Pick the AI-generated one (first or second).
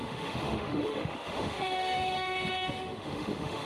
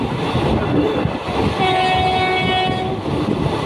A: first